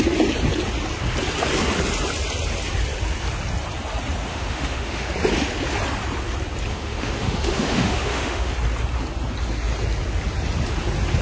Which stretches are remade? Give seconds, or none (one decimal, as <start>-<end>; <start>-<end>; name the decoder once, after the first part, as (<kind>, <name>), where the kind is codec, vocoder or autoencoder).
4.3-5.1 (autoencoder, DAC-VAE); 6.7-8.5